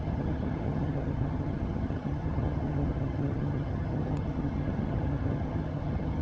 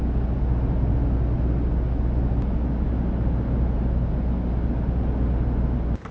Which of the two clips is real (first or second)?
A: second